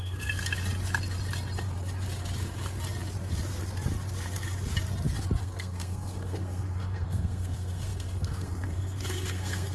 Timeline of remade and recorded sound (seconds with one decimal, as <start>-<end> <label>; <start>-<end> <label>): 0.0-0.4 remade; 0.4-5.4 recorded; 5.4-9.7 remade